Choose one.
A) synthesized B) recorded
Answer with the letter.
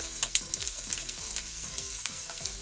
A